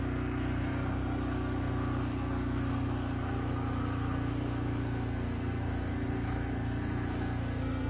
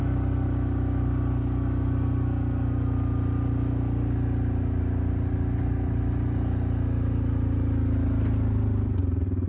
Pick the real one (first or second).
second